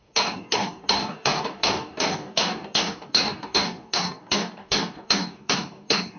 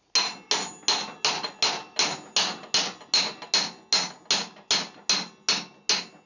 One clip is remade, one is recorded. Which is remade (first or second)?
first